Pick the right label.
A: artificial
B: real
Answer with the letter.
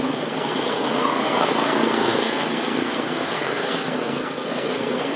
A